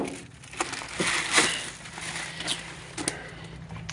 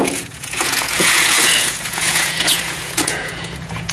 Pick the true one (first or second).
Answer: first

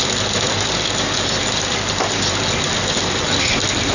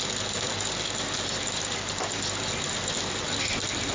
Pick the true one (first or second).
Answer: second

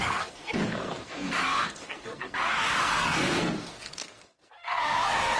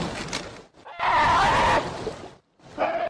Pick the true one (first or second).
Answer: second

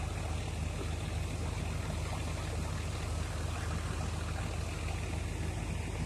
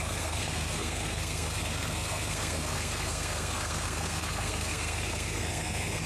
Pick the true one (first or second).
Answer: first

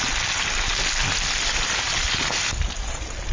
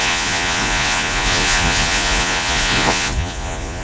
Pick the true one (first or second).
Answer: first